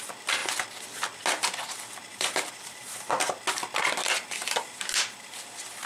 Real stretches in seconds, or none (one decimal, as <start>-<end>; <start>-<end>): 0.0-2.1; 3.4-5.9